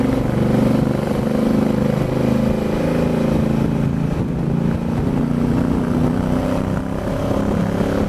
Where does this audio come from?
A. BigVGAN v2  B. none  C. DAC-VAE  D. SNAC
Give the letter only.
B